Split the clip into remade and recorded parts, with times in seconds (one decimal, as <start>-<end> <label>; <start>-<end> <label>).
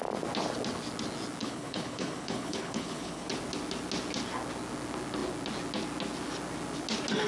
0.0-1.4 recorded; 1.4-3.3 remade; 3.3-7.3 recorded